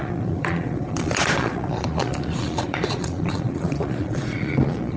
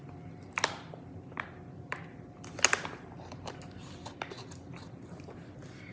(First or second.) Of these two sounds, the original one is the second